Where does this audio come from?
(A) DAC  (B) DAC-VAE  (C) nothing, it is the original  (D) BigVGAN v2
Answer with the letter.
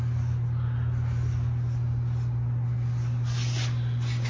C